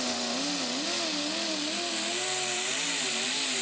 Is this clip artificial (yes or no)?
no